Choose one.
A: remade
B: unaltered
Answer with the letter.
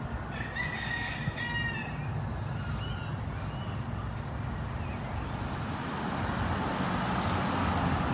B